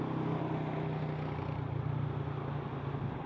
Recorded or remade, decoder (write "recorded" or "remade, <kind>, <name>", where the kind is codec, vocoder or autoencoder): recorded